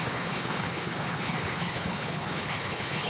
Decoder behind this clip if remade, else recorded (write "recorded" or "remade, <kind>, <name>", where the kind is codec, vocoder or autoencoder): remade, codec, HILCodec